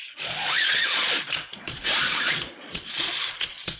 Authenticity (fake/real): fake